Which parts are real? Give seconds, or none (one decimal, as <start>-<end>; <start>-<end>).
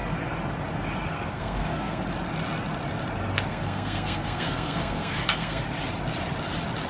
0.0-1.1; 2.0-3.5; 5.6-6.9